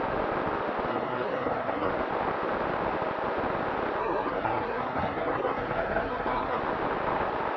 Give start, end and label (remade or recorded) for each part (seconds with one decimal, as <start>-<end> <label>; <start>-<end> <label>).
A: 0.0-0.9 recorded; 0.9-1.9 remade; 1.9-4.0 recorded; 4.0-6.6 remade; 6.6-7.6 recorded